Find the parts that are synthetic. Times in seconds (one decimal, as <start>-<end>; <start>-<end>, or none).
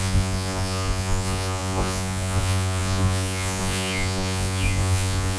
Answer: 0.0-5.4